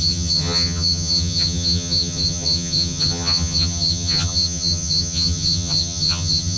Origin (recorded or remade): remade